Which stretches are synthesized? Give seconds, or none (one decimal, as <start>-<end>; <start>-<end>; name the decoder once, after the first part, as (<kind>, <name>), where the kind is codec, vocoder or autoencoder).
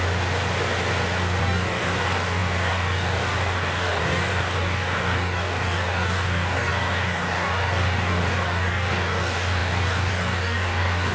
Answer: 1.4-11.1 (codec, DAC)